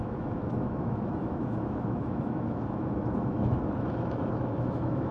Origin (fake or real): fake